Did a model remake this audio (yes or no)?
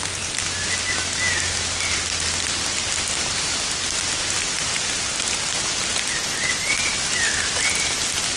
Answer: no